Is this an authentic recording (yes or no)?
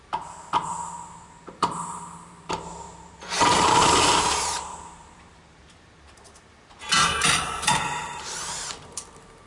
no